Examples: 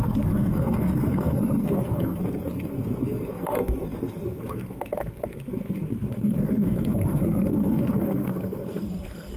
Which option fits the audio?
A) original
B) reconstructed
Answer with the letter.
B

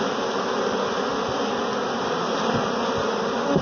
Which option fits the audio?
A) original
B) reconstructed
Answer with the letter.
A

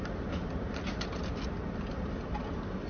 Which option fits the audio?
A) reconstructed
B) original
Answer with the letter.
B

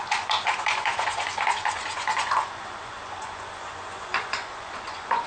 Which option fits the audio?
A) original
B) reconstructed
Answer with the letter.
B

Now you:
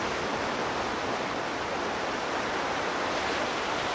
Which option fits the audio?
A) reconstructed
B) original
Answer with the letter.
B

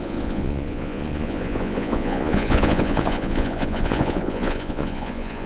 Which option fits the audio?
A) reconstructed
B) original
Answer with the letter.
A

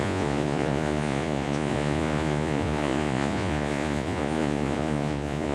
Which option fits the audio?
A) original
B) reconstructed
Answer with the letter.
B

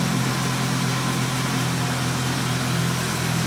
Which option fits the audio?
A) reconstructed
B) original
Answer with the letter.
B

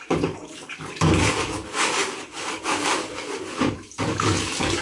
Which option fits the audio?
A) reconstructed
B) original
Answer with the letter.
A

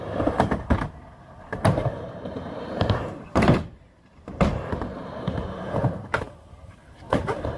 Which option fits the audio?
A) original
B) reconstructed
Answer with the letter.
B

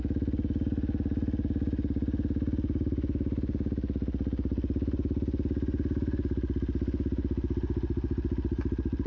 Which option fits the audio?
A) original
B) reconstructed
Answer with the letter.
A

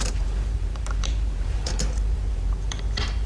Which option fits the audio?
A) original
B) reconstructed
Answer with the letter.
B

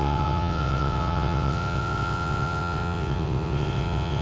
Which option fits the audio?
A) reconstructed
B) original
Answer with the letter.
A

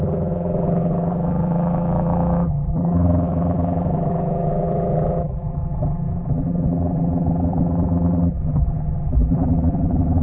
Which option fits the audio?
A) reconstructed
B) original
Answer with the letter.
A